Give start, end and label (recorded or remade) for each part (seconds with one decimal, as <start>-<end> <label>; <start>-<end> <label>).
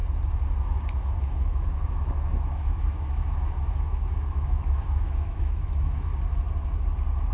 0.0-1.0 recorded; 1.0-6.1 remade; 6.1-7.3 recorded